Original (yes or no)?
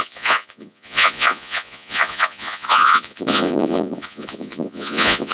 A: no